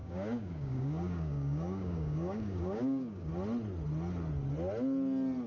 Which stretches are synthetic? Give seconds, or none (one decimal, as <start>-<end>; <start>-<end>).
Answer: 0.0-3.3